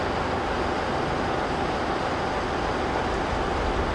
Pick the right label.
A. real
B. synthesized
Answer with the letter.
A